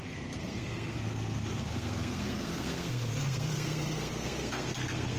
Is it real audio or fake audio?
fake